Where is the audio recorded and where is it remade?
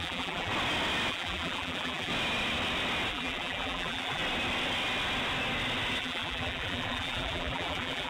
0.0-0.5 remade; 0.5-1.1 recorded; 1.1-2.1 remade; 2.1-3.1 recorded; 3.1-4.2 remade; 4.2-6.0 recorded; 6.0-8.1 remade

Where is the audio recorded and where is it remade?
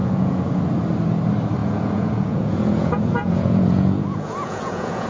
0.0-0.6 remade; 0.6-1.6 recorded; 1.6-5.1 remade